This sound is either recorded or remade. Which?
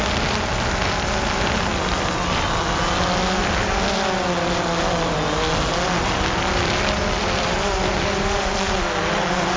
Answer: recorded